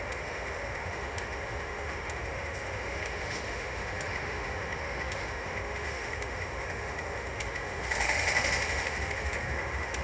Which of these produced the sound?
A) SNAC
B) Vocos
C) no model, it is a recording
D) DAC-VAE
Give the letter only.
D